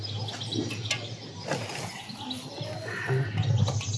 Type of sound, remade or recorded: recorded